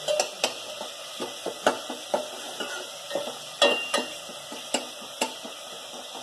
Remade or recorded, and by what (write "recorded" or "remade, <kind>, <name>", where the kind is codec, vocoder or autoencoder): recorded